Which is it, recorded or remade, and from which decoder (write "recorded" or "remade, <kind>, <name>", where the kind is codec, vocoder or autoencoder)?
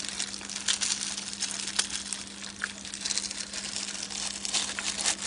recorded